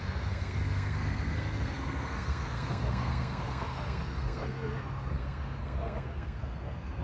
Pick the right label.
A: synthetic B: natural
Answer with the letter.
A